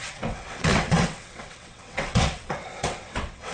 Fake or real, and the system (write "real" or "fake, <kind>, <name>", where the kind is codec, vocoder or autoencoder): fake, vocoder, WaveNeXt